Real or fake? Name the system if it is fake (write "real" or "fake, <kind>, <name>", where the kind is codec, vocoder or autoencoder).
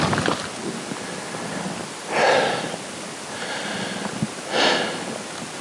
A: real